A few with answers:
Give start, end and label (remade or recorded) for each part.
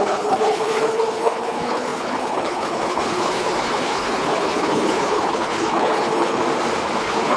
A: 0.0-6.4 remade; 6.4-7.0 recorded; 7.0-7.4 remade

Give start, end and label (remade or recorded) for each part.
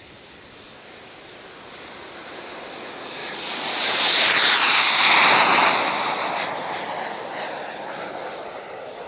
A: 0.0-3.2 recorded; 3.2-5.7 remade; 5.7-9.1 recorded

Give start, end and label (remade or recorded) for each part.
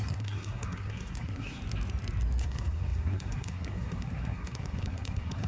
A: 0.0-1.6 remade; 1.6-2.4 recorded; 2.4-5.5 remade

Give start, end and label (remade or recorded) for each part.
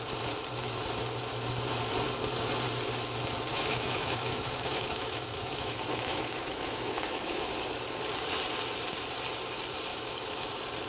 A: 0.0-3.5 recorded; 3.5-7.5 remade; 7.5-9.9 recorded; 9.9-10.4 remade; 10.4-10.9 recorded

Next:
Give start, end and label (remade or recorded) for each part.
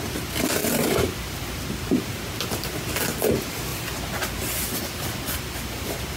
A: 0.0-6.2 recorded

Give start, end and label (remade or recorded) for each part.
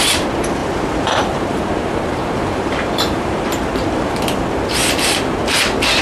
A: 0.0-0.6 recorded; 0.6-4.2 remade; 4.2-6.0 recorded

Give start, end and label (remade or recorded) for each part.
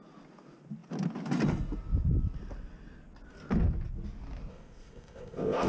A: 0.0-4.5 recorded; 4.5-5.7 remade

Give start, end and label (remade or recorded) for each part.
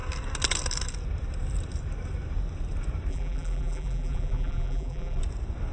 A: 0.0-3.1 recorded; 3.1-5.2 remade; 5.2-5.7 recorded